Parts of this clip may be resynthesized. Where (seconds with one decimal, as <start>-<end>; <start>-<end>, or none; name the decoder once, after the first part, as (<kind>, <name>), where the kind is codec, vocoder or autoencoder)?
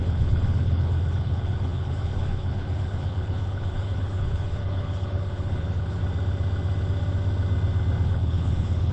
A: 0.0-6.0 (codec, HILCodec); 8.1-8.9